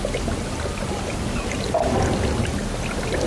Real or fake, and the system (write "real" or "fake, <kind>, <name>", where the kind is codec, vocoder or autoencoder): real